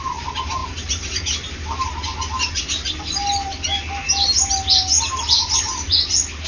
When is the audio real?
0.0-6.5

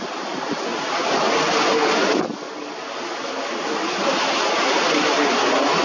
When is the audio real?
0.0-5.8

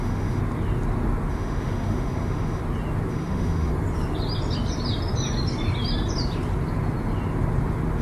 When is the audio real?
0.4-1.3; 2.6-3.1; 3.7-8.0

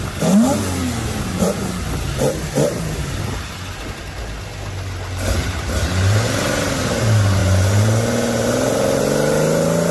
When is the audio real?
0.0-9.9

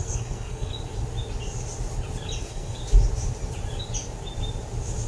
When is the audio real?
0.7-2.4; 2.8-5.1

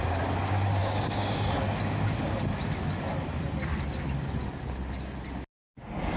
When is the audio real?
0.0-0.8; 1.5-6.2

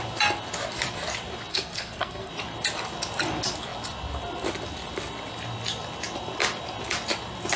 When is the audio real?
0.0-1.5; 2.3-7.6